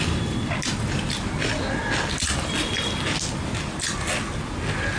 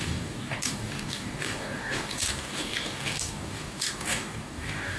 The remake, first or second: second